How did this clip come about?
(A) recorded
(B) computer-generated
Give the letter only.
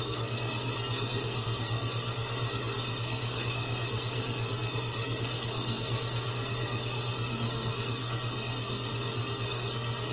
B